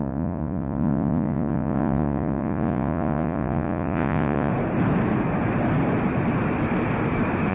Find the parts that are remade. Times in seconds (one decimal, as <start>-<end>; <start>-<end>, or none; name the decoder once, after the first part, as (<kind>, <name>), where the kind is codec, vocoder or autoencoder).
0.0-4.5 (vocoder, Vocos)